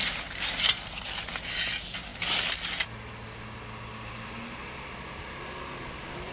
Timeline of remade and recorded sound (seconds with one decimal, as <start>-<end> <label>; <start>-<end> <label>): 0.0-6.3 recorded